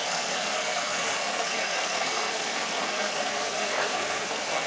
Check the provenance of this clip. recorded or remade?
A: remade